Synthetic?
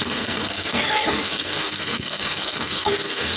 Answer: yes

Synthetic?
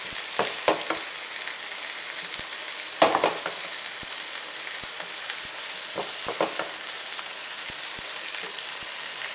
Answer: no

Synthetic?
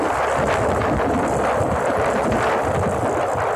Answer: no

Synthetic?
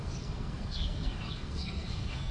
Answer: yes